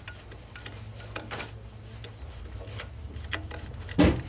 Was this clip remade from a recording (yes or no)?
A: no